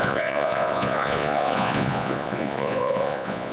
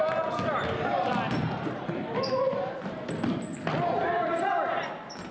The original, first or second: second